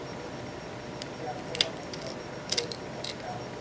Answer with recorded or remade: recorded